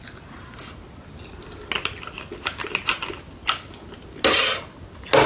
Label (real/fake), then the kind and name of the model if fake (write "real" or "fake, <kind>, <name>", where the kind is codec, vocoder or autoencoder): real